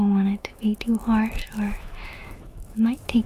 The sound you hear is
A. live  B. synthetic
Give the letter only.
B